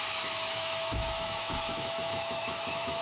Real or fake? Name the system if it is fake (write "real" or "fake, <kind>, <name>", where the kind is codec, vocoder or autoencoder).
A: fake, autoencoder, DAC-VAE